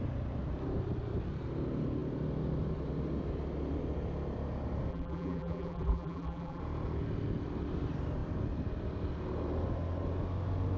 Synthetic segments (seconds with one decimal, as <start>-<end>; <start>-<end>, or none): 4.9-6.6